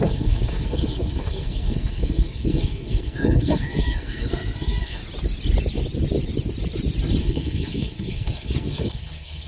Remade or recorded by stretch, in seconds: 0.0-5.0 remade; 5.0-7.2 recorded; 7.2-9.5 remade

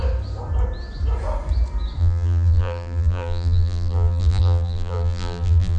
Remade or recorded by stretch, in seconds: 0.0-2.0 recorded; 2.0-5.8 remade

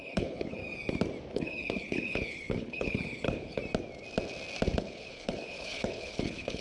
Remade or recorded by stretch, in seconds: 0.0-0.6 remade; 0.6-1.3 recorded; 1.3-3.6 remade; 3.6-4.8 recorded; 4.8-6.6 remade

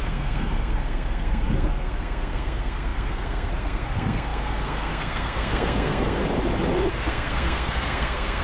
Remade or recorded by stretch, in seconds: 0.0-6.2 remade; 6.2-6.9 recorded; 6.9-8.4 remade

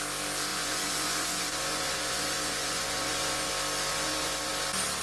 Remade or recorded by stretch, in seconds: 0.0-0.5 recorded; 0.5-3.5 remade; 3.5-3.9 recorded; 3.9-4.5 remade; 4.5-5.0 recorded